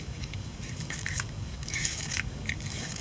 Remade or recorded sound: remade